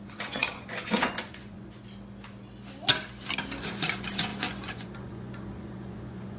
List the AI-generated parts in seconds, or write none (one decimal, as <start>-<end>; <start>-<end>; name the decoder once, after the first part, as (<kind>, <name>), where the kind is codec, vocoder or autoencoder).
0.0-1.8 (vocoder, Vocos); 3.6-6.4

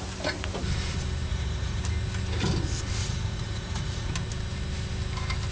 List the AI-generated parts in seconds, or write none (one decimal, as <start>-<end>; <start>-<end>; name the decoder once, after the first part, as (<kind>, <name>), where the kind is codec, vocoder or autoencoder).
1.3-1.8 (vocoder, Vocos); 3.0-4.1

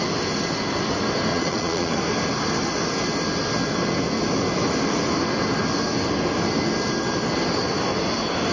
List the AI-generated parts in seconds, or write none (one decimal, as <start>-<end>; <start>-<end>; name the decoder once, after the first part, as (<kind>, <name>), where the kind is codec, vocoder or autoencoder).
1.3-2.0 (vocoder, Vocos)